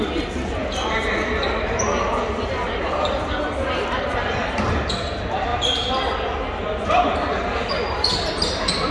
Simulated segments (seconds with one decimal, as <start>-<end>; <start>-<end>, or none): none